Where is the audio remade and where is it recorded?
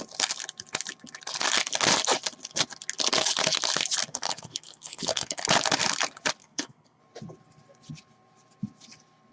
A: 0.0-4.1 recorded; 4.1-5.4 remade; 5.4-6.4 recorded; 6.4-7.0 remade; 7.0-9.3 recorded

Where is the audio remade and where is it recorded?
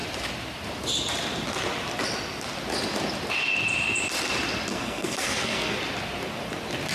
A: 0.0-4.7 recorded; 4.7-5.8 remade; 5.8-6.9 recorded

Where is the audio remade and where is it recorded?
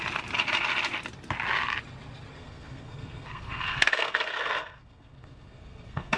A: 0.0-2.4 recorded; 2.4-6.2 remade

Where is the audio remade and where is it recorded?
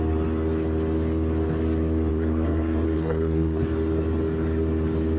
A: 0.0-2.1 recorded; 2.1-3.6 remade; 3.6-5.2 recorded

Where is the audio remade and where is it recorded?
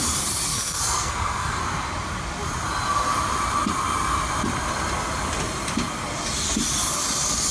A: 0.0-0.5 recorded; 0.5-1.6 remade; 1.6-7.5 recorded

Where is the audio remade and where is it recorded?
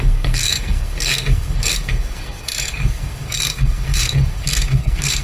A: 0.0-5.2 remade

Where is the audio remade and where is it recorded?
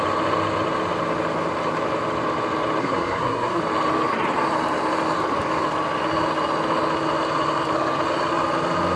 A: 0.0-2.8 recorded; 2.8-3.6 remade; 3.6-9.0 recorded